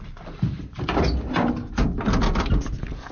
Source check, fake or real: real